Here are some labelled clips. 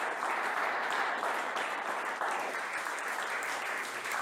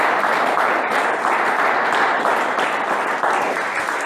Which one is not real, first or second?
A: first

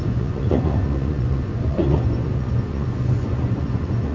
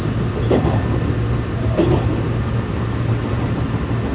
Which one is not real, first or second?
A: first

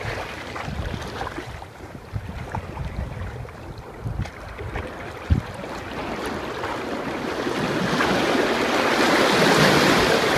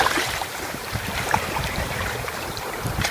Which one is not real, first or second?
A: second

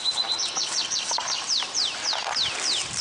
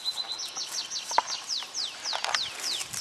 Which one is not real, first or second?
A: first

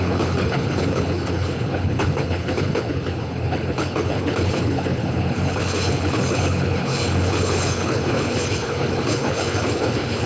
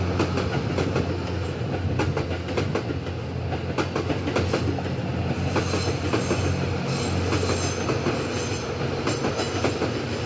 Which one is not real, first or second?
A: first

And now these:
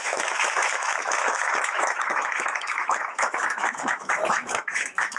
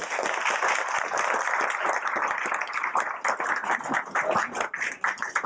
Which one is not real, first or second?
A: first